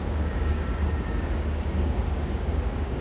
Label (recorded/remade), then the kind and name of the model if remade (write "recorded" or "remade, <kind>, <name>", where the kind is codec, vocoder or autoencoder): remade, codec, DAC